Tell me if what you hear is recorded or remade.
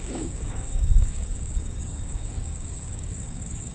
remade